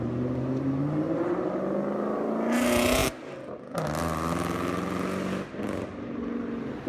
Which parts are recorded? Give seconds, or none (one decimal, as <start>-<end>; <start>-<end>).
0.0-6.9